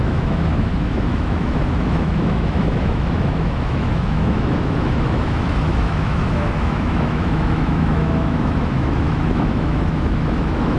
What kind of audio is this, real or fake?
fake